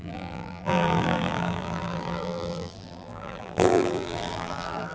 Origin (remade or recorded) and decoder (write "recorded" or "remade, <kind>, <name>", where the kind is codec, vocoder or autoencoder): remade, vocoder, BigVGAN v2